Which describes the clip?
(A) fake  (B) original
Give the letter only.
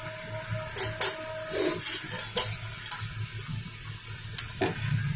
B